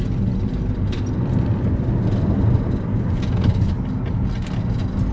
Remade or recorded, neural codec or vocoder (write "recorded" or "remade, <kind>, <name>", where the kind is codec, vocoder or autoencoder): recorded